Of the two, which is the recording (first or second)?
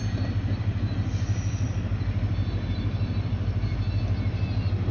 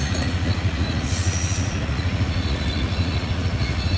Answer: first